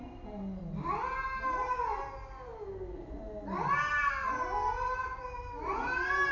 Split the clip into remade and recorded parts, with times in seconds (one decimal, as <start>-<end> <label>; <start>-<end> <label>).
0.0-6.3 recorded